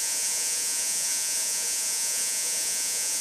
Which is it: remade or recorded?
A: remade